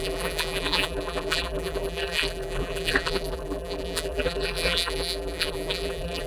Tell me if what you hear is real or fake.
fake